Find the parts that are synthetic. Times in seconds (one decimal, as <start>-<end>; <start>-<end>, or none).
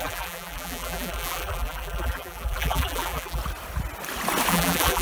0.0-3.4; 4.5-5.0